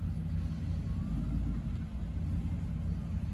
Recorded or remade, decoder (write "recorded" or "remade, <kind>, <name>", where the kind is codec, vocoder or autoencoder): recorded